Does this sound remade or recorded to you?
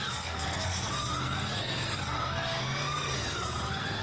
remade